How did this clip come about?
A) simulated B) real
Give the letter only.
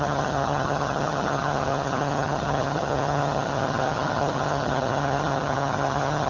A